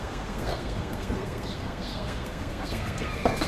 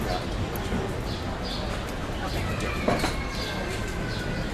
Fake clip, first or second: first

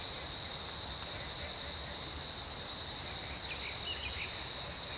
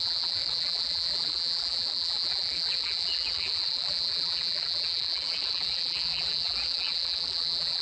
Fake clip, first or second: second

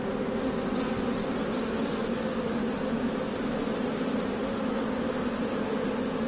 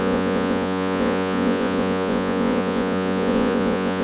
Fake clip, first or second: second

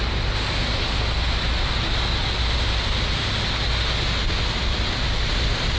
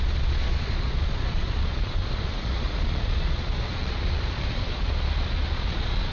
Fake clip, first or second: second